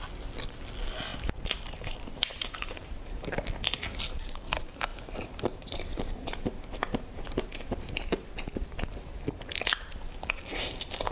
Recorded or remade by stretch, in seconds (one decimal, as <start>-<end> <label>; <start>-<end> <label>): 0.0-1.1 recorded; 1.1-3.3 remade; 3.3-4.9 recorded; 4.9-7.5 remade; 7.5-11.1 recorded